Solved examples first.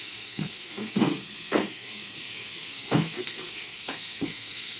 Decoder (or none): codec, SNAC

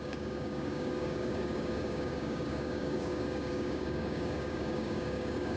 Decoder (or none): codec, DAC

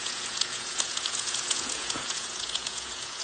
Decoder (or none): vocoder, Vocos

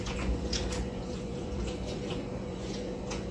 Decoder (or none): vocoder, Vocos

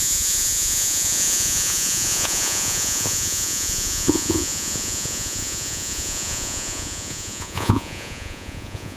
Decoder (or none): vocoder, Vocos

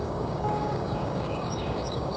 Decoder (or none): codec, DAC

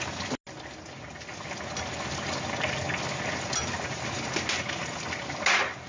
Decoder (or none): none